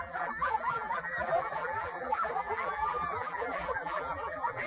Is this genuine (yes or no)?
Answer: no